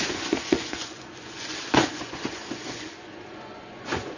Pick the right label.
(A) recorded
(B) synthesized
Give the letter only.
B